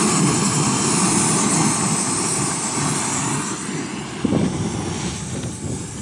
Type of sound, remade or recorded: recorded